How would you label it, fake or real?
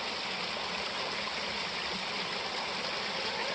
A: fake